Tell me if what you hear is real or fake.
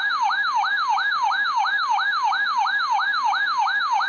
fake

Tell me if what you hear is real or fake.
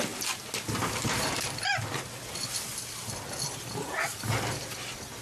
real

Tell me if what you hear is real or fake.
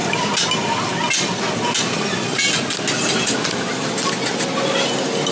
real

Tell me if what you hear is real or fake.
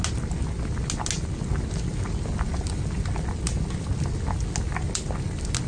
real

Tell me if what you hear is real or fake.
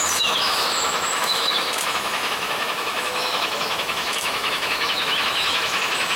fake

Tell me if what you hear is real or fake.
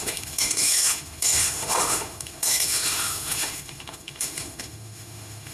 fake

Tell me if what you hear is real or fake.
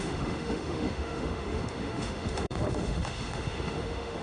fake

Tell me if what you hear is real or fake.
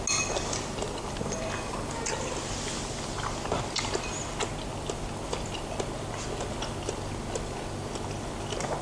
real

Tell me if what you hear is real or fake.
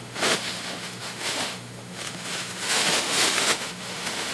fake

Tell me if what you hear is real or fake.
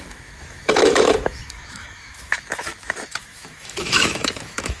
fake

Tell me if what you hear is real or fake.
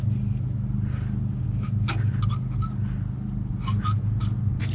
real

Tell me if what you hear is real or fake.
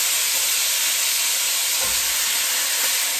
real